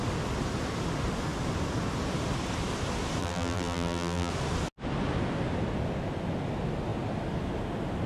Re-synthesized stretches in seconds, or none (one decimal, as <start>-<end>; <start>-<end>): 3.2-4.3